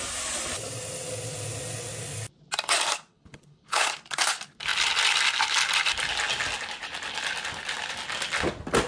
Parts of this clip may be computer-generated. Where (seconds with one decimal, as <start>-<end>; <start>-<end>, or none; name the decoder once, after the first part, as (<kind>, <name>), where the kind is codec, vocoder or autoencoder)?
3.1-3.9 (codec, HILCodec)